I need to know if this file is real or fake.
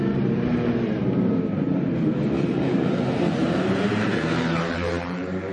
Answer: fake